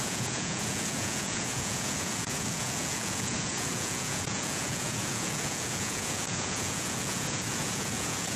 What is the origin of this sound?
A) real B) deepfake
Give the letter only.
B